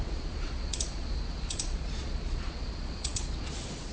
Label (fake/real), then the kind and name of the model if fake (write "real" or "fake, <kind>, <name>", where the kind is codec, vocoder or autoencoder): fake, vocoder, Vocos